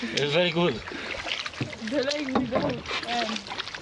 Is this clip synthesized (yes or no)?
no